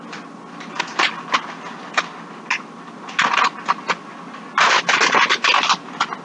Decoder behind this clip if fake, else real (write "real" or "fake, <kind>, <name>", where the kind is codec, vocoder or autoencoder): real